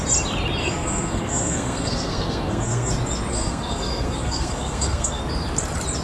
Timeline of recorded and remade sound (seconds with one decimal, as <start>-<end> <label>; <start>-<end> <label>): 0.0-0.6 recorded; 0.6-2.9 remade; 2.9-3.3 recorded; 3.3-5.2 remade; 5.2-6.0 recorded